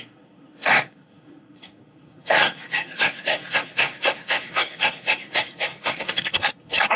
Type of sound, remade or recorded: remade